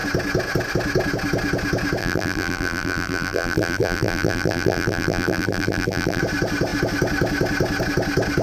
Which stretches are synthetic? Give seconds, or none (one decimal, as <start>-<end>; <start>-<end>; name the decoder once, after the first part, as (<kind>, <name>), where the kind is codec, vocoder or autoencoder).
2.0-6.2 (vocoder, BigVGAN v2)